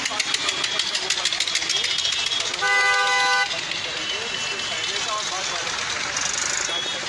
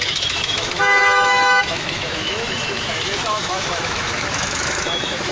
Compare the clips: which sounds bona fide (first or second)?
first